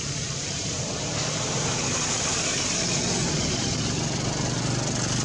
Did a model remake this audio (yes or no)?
no